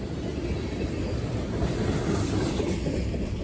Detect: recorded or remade recorded